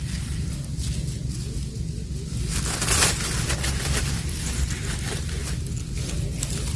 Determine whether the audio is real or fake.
real